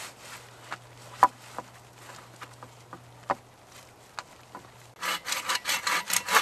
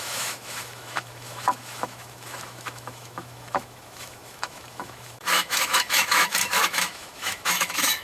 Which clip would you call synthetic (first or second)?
second